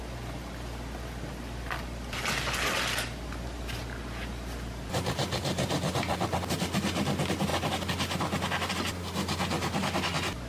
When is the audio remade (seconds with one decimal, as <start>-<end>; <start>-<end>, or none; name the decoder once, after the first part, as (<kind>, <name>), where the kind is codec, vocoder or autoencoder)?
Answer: none